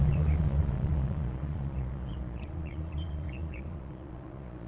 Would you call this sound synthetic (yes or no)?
yes